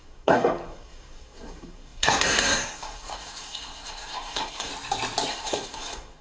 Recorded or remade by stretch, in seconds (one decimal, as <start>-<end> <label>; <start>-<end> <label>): 0.0-4.7 remade; 4.7-5.3 recorded; 5.3-6.2 remade